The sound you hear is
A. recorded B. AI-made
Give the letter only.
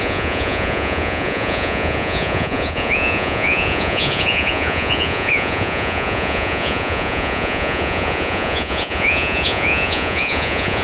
B